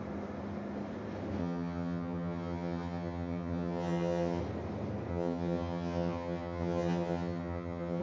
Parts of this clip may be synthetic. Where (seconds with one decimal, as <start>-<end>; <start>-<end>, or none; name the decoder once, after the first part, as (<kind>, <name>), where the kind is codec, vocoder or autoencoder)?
1.4-4.4 (vocoder, HiFi-GAN); 5.1-8.0